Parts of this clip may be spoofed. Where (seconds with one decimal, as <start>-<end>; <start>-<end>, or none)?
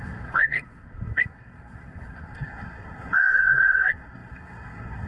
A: 0.0-5.1